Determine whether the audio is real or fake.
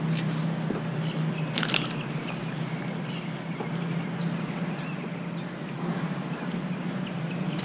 real